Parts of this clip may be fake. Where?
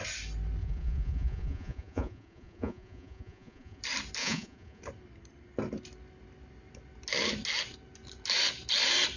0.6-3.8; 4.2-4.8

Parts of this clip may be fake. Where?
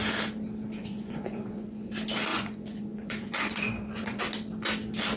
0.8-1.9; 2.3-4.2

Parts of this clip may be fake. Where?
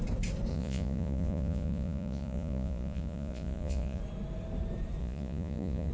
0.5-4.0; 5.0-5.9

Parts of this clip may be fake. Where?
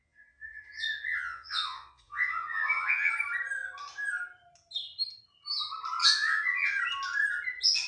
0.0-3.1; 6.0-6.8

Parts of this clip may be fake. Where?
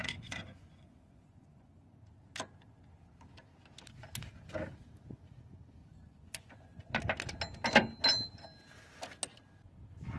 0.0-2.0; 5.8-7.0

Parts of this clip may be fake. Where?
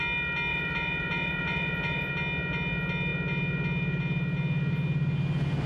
0.5-2.1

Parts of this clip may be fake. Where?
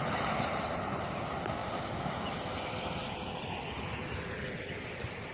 none